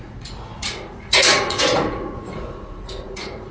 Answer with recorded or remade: remade